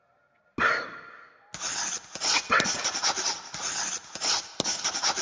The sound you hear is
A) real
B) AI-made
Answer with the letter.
A